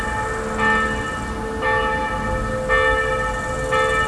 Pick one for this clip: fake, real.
real